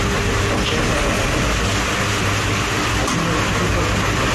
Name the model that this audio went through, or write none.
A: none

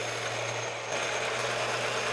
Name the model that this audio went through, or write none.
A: none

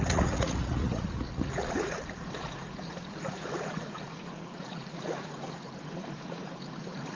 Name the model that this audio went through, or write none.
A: vocoder, Vocos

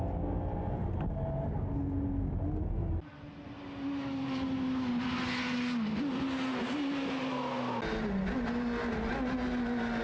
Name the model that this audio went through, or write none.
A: none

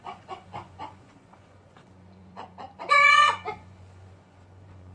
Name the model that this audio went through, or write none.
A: vocoder, Vocos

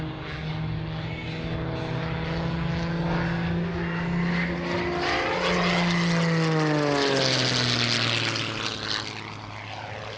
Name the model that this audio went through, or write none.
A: none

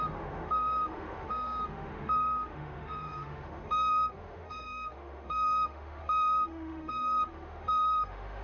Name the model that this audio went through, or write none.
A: autoencoder, DAC-VAE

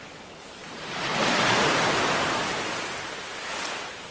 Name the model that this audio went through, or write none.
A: none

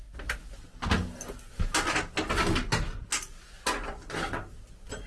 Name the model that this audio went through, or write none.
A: none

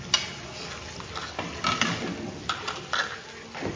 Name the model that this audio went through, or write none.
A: none